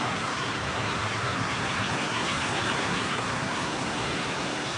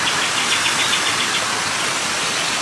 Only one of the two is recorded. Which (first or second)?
second